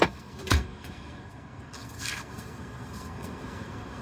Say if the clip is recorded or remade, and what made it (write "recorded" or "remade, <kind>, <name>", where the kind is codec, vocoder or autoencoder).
remade, codec, SNAC